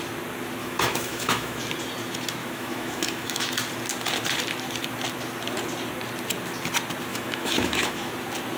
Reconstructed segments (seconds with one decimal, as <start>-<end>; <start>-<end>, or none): 0.6-1.6; 2.4-3.5; 7.1-8.1